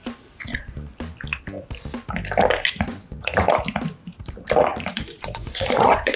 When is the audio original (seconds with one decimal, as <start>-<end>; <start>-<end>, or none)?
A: 0.0-2.9; 3.5-4.7